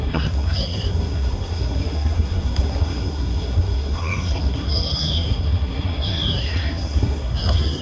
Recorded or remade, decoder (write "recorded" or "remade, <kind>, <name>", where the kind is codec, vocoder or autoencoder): remade, codec, SNAC